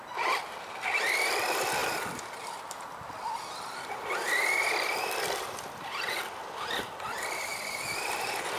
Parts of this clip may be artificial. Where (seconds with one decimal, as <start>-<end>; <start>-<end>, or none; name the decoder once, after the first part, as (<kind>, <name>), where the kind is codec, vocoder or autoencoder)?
0.0-8.6 (vocoder, BigVGAN v2)